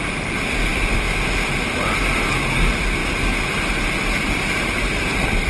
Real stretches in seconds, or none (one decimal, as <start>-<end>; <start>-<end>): 0.0-5.5